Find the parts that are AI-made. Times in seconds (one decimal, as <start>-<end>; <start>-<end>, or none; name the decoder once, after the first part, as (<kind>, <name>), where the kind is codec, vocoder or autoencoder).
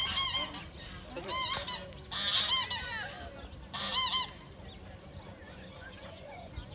5.4-6.7 (vocoder, Vocos)